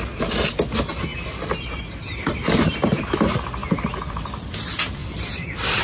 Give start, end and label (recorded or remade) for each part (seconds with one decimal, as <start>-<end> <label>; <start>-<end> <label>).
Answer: 0.0-5.0 recorded; 5.0-5.8 remade